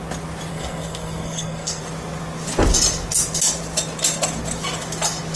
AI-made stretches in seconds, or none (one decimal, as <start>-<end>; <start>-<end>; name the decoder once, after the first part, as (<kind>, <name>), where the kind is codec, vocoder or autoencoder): 0.5-1.8 (codec, SNAC)

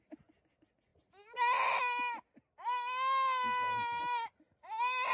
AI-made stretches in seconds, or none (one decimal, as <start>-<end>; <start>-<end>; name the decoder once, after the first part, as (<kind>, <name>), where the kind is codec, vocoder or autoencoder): none

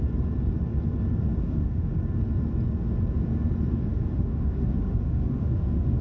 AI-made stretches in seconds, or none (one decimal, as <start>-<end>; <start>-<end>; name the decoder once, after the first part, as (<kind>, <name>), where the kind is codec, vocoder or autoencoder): 1.4-1.9 (autoencoder, DAC-VAE); 3.7-6.0